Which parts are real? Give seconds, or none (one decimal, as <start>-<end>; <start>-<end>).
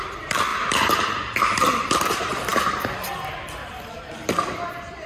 0.0-5.1